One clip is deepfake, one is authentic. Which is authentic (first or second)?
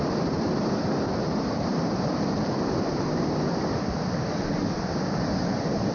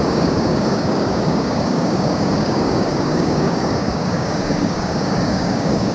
first